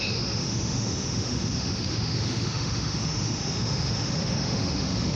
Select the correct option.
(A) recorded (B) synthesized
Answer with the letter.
B